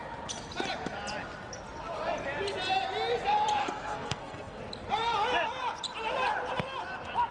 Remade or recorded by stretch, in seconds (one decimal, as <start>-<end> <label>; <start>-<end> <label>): 0.0-3.6 recorded; 3.6-4.6 remade; 4.6-7.3 recorded